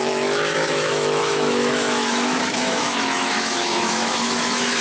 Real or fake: fake